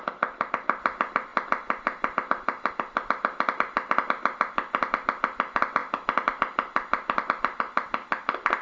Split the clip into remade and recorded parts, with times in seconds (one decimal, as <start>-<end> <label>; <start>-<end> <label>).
0.0-8.6 remade